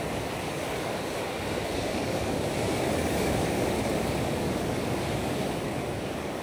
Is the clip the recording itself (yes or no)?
no